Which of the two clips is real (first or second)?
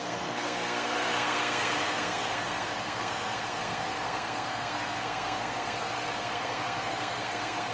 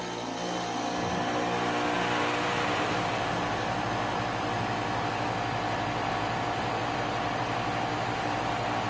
second